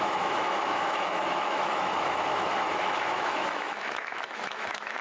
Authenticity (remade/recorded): remade